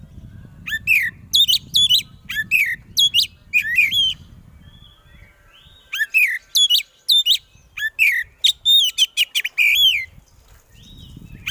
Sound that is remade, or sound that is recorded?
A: recorded